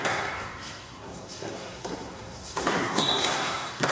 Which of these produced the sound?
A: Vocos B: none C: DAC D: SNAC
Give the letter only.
D